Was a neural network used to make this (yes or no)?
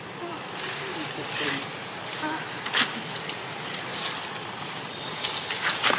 yes